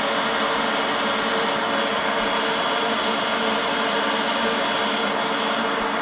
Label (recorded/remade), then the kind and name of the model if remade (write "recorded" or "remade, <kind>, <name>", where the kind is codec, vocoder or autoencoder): recorded